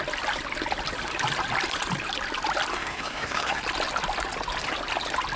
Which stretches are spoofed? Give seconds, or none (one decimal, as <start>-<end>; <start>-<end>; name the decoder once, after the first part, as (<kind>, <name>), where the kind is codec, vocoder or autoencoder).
2.7-3.6 (codec, SNAC)